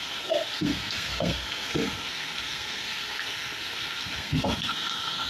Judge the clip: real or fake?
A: fake